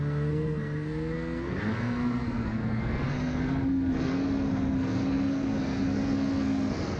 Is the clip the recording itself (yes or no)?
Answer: no